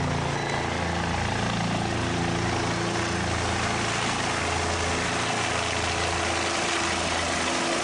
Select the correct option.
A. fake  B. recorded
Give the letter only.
B